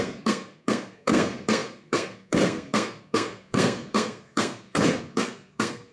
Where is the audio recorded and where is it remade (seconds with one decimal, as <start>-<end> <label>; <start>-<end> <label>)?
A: 0.0-5.9 remade

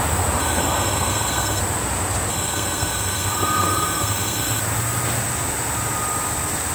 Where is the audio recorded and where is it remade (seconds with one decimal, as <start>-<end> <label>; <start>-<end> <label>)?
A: 0.0-0.4 recorded; 0.4-1.6 remade; 1.6-2.3 recorded; 2.3-4.6 remade; 4.6-6.7 recorded

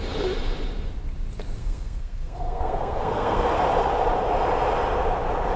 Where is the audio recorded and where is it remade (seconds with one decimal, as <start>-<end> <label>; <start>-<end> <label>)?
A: 0.0-1.6 recorded; 1.6-3.5 remade; 3.5-5.6 recorded

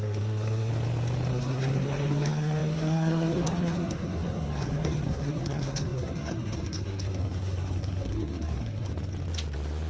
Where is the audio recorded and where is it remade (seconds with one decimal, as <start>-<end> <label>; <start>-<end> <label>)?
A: 0.0-0.7 remade; 0.7-1.3 recorded; 1.3-8.9 remade; 8.9-9.9 recorded

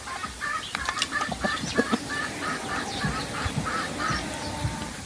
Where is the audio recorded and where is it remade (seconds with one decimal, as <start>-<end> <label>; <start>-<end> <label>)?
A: 0.0-5.1 recorded

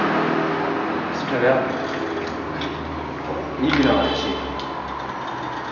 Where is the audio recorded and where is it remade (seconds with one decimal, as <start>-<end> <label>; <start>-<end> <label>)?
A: 0.0-5.7 recorded

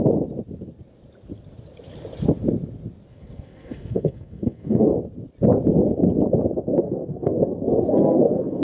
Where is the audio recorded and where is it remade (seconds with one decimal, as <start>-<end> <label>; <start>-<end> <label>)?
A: 0.0-3.1 recorded; 3.1-4.9 remade; 4.9-6.7 recorded; 6.7-8.6 remade

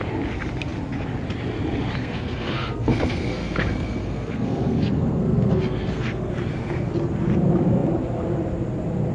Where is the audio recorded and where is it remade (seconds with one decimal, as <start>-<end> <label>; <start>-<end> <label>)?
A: 0.0-2.0 recorded; 2.0-6.3 remade; 6.3-9.1 recorded